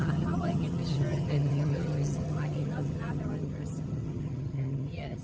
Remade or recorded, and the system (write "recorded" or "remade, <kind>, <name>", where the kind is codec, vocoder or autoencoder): remade, vocoder, HiFi-GAN